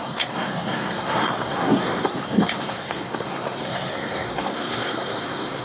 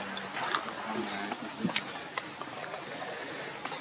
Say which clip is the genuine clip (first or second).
second